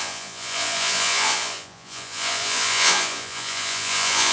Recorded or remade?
remade